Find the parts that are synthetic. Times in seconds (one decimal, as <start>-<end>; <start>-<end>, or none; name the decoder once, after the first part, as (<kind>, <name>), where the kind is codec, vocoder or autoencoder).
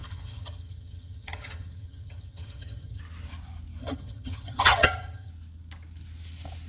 0.0-3.0 (vocoder, HiFi-GAN); 3.8-5.3